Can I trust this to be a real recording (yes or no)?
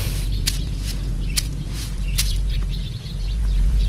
no